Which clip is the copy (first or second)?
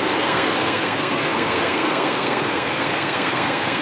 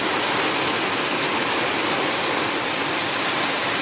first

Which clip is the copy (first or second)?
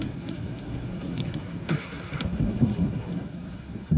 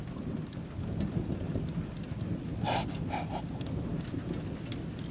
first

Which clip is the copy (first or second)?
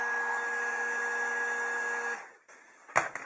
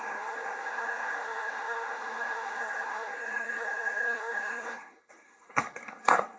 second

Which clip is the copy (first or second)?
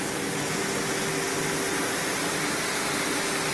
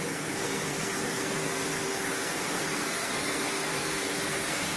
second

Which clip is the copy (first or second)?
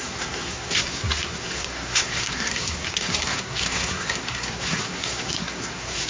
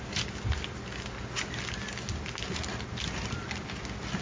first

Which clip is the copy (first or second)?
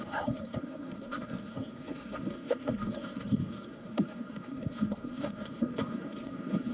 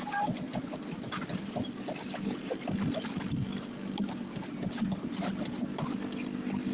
first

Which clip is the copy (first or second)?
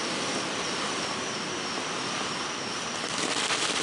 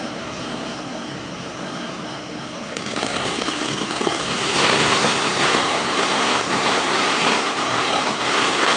second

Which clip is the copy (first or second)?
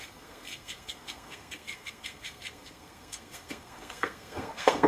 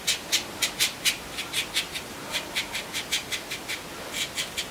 first